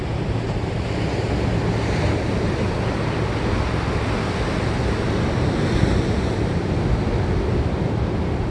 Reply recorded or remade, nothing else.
recorded